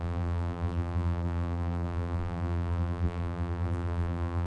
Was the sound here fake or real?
fake